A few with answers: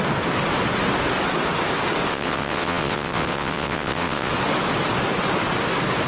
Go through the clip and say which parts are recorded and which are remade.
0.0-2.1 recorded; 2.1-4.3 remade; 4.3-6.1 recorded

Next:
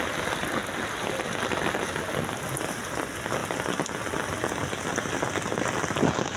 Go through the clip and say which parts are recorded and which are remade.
0.0-6.4 recorded

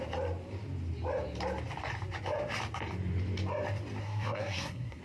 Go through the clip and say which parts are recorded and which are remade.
0.0-4.0 recorded; 4.0-5.0 remade

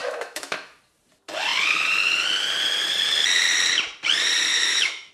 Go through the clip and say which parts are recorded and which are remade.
0.0-0.8 remade; 0.8-4.5 recorded; 4.5-5.1 remade

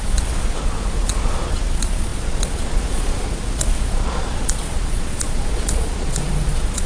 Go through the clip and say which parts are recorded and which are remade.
0.0-6.9 remade

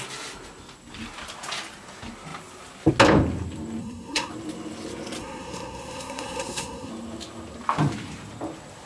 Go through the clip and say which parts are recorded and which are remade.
0.0-3.8 recorded; 3.8-4.3 remade; 4.3-5.2 recorded; 5.2-6.9 remade; 6.9-8.9 recorded

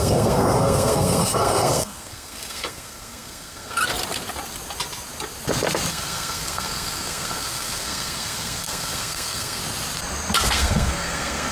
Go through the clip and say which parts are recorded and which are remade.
0.0-3.8 remade; 3.8-5.9 recorded; 5.9-9.6 remade; 9.6-10.5 recorded; 10.5-11.5 remade

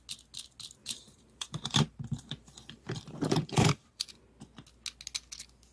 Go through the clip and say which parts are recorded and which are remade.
0.0-0.8 recorded; 0.8-4.2 remade; 4.2-5.7 recorded